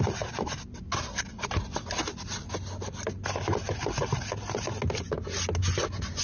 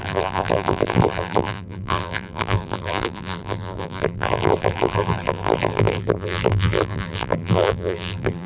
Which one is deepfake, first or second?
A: second